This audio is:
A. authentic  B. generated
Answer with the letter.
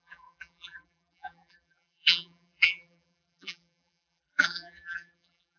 B